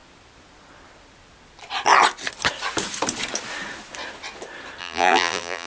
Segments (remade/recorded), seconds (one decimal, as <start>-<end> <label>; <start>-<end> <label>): 0.0-4.8 recorded; 4.8-5.7 remade